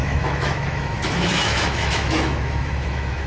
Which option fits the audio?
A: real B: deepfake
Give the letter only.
B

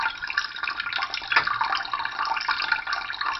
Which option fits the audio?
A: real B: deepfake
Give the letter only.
A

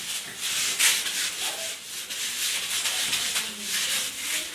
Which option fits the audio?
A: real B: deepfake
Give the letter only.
A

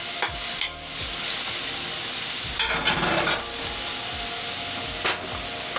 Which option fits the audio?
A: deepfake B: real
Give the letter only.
B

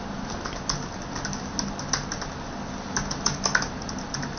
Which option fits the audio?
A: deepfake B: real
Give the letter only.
B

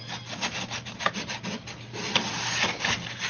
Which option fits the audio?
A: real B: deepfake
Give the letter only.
A